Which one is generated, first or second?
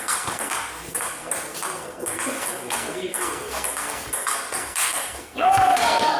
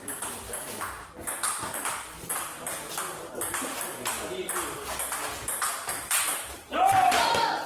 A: first